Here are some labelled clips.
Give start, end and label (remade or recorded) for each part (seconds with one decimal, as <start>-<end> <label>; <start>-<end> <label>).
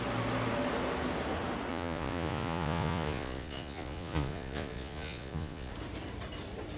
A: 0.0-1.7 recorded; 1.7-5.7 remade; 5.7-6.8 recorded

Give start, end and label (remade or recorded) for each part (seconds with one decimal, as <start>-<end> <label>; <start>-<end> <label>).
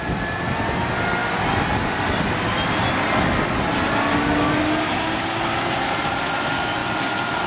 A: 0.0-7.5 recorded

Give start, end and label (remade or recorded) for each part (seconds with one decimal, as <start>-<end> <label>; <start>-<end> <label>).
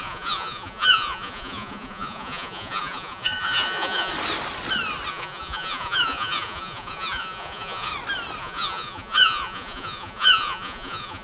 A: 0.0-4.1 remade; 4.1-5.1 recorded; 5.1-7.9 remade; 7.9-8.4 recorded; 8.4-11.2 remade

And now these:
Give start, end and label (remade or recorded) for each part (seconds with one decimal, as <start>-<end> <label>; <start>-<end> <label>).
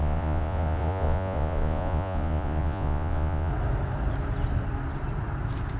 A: 0.0-3.5 remade; 3.5-5.8 recorded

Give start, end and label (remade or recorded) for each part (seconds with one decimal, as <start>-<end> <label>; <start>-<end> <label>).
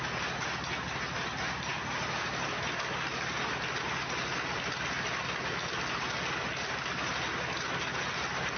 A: 0.0-8.6 recorded